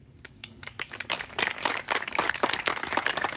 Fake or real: fake